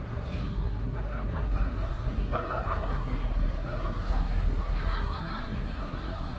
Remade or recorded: remade